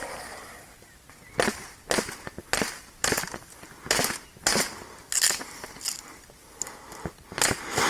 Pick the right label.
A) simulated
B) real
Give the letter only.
B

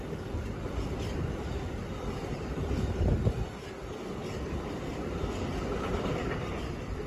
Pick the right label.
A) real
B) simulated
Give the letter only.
B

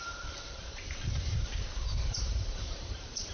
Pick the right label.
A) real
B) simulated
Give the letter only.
B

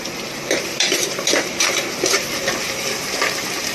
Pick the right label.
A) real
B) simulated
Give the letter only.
B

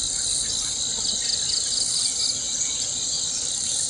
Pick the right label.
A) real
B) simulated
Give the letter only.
A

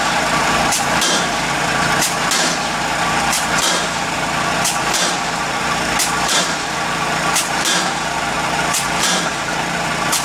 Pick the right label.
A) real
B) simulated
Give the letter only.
B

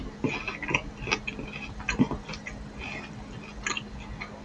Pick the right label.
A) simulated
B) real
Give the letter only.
B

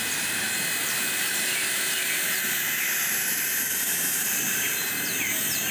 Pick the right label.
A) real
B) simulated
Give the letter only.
B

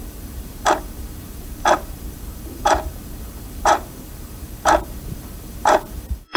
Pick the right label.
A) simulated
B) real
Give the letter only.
A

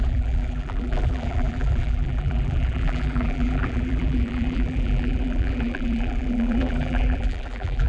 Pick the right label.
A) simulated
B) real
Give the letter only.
A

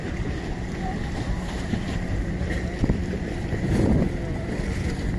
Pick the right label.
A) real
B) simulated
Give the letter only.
B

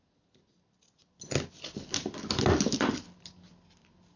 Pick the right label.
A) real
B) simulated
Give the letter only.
A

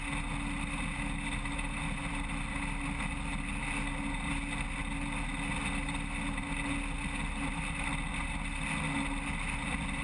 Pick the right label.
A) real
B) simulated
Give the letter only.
A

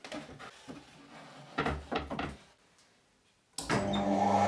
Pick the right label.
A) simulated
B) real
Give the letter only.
B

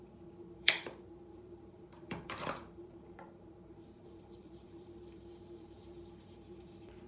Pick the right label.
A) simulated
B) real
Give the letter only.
A